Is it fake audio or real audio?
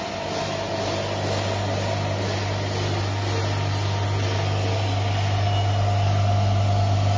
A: real